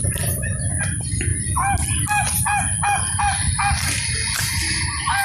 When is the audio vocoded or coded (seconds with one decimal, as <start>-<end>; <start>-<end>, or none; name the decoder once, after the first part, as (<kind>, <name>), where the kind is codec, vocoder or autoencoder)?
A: none